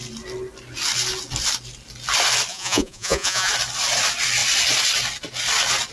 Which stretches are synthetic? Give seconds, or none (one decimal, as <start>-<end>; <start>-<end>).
2.5-3.5